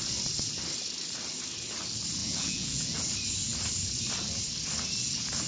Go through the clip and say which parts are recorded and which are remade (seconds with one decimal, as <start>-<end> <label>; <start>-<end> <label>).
0.0-2.2 recorded; 2.2-3.0 remade; 3.0-5.5 recorded